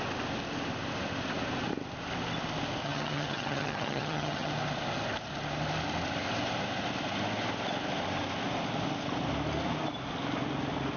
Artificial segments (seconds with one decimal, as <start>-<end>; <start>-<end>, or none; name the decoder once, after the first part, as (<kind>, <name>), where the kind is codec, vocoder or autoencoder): 2.8-4.5 (vocoder, HiFi-GAN)